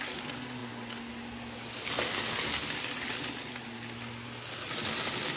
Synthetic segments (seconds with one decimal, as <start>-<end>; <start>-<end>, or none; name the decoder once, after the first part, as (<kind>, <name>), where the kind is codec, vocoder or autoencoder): none

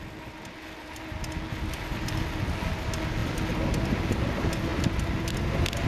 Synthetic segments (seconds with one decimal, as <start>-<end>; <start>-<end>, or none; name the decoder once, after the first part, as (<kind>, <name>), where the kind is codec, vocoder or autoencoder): none

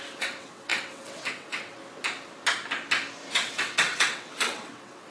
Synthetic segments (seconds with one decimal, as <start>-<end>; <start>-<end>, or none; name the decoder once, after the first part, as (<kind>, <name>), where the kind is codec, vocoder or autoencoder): 0.0-1.8 (vocoder, WaveNeXt); 3.3-5.1

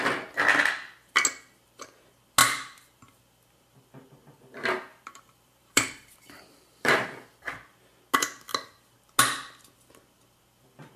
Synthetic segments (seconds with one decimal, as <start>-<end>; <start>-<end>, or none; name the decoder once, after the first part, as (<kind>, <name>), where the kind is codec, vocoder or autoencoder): 2.4-3.0 (vocoder, BigVGAN v2); 4.9-7.3

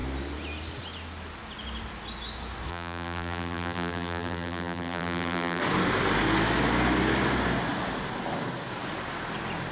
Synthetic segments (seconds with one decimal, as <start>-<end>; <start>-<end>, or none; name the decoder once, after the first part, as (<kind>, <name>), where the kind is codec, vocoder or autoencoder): 2.7-5.6 (vocoder, BigVGAN v2)

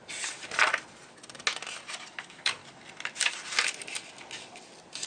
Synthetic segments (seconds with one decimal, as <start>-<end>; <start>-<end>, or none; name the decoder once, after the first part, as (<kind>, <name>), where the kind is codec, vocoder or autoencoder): 2.2-2.6 (codec, DAC)

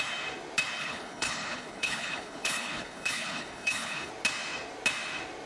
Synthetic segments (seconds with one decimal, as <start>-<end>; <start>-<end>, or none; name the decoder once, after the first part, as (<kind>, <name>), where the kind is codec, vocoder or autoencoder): 0.8-4.1 (codec, HILCodec)